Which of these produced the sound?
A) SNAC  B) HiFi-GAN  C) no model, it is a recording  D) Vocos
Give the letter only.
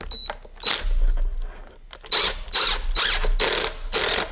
C